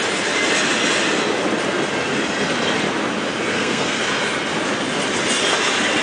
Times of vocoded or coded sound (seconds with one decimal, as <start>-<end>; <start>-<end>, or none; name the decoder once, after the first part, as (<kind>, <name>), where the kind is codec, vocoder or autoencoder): 3.5-4.0 (codec, SNAC)